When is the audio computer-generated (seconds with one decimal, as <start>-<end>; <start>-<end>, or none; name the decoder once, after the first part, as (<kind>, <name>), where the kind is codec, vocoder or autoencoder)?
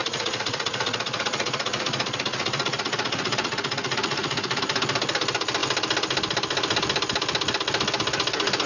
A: 0.0-4.6 (vocoder, Vocos)